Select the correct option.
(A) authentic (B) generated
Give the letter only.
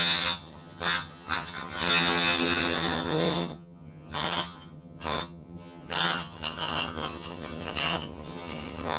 B